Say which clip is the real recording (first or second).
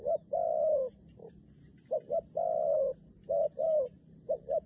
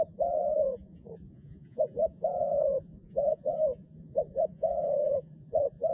first